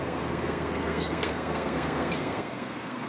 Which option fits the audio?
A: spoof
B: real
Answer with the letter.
A